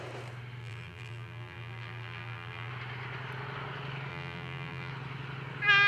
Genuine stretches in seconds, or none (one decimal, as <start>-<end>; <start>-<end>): 0.0-0.6; 2.7-4.1; 4.9-5.9